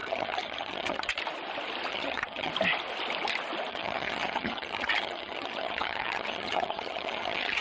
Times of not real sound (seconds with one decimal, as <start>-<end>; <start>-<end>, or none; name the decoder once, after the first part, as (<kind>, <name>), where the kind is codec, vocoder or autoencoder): 0.0-1.2 (vocoder, HiFi-GAN); 1.9-2.5; 3.7-7.6

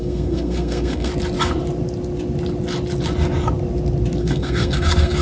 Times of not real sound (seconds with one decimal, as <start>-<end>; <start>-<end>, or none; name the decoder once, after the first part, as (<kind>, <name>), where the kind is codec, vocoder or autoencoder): 0.0-1.1 (codec, SNAC); 4.2-5.2

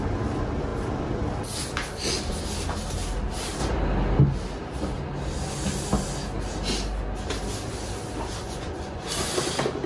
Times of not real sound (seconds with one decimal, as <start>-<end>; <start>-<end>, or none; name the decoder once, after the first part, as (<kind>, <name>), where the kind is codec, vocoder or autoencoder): 8.4-9.0 (vocoder, Vocos)

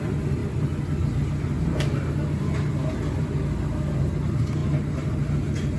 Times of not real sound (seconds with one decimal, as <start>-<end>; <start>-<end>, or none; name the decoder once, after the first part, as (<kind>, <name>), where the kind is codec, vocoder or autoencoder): none

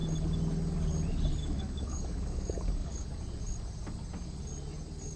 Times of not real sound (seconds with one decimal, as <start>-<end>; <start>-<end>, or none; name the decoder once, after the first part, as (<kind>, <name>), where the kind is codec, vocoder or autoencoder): 1.4-3.2 (codec, DAC)

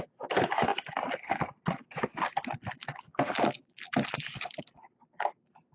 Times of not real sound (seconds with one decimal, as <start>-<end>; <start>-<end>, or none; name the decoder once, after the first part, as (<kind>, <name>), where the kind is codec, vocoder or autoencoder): none